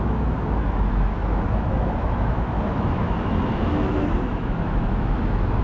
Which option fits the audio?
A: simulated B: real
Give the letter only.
A